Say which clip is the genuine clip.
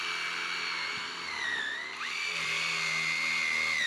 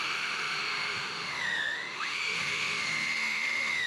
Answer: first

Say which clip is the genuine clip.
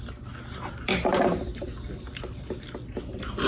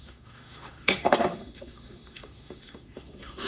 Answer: first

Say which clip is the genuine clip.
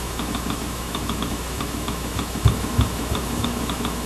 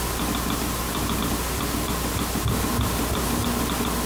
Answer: second